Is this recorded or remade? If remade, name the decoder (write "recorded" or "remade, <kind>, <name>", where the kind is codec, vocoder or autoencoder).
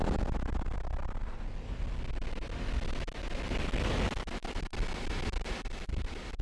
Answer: recorded